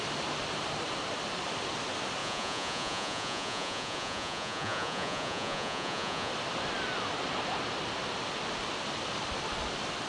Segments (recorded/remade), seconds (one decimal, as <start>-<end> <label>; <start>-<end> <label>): 0.0-2.2 recorded; 2.2-6.3 remade; 6.3-10.1 recorded

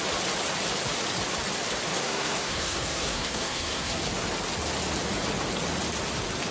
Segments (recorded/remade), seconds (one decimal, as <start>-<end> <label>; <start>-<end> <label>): 0.0-1.9 recorded; 1.9-4.0 remade; 4.0-6.5 recorded